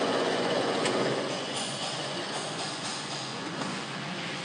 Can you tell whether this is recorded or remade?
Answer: remade